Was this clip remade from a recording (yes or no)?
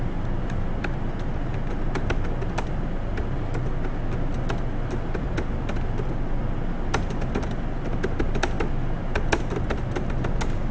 no